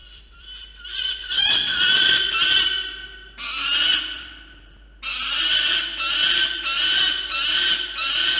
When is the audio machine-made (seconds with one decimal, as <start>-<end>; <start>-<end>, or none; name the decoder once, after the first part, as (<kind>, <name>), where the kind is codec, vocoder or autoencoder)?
0.0-2.6 (vocoder, BigVGAN v2); 5.1-5.8